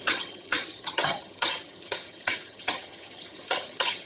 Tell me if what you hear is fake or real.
fake